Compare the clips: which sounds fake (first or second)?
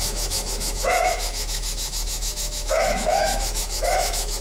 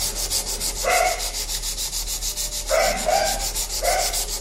first